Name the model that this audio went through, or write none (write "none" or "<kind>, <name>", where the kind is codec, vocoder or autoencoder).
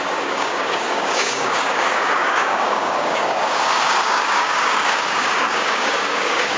codec, DAC